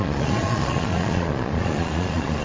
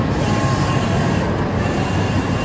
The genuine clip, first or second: second